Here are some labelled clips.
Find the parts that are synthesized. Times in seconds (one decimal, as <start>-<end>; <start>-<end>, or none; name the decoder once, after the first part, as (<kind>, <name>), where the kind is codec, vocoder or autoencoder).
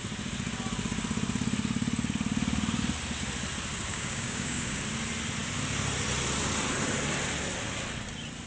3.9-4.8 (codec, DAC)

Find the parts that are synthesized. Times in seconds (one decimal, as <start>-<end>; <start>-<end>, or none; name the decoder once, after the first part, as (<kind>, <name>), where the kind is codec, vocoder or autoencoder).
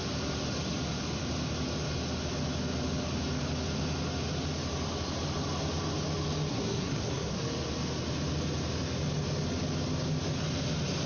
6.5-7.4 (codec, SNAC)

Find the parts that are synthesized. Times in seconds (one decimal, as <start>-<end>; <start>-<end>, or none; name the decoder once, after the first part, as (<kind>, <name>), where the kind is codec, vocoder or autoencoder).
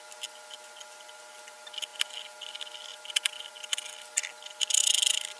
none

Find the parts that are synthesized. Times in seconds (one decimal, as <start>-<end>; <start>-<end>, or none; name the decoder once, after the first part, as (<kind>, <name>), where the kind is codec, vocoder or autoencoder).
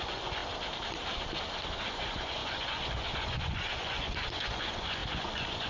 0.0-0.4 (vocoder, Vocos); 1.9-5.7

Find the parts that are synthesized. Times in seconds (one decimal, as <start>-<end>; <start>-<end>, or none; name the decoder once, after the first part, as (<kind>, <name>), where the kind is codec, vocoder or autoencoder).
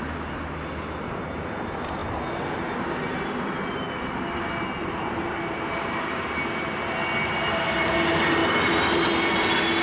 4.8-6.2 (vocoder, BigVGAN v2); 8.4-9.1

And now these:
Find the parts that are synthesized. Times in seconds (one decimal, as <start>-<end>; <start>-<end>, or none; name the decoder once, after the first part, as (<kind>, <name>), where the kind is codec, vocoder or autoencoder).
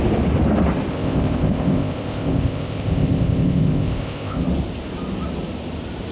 0.9-4.4 (codec, ZipCodec)